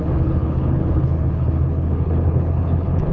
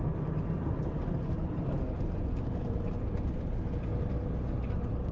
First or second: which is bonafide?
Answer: second